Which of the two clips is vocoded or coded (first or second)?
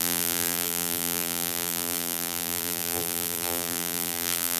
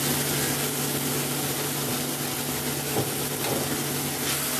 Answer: first